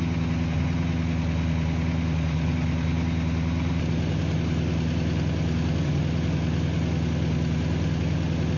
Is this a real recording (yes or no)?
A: yes